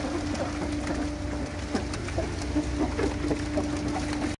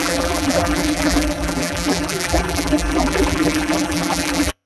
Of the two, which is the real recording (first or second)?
first